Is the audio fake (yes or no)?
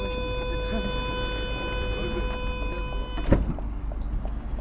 no